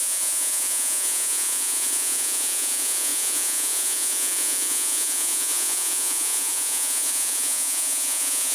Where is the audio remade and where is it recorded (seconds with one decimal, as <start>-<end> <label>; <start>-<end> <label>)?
0.0-8.5 remade